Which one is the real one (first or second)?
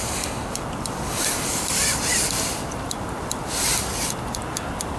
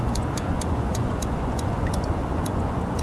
first